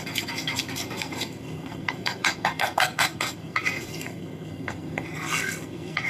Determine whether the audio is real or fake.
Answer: fake